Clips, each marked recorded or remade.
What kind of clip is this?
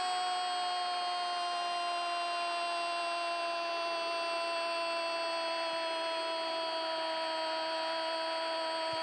recorded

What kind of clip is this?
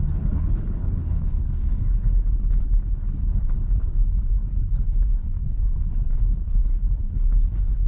remade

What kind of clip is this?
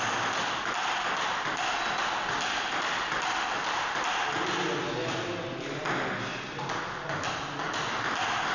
recorded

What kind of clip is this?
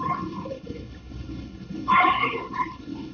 remade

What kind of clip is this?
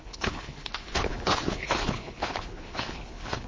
remade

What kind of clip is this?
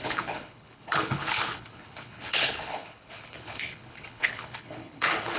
remade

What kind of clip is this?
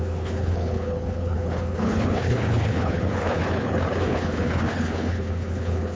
remade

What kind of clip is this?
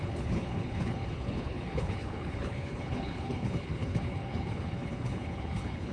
remade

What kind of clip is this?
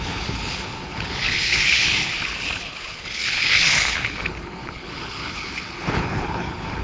remade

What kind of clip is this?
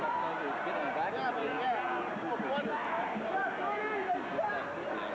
recorded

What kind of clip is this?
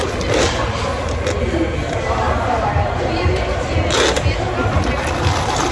recorded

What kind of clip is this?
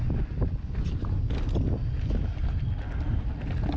recorded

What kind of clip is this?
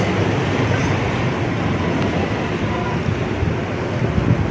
recorded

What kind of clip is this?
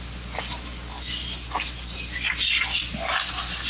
recorded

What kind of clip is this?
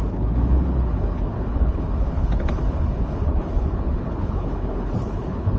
remade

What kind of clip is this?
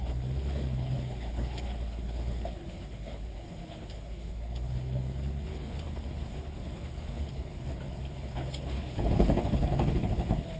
remade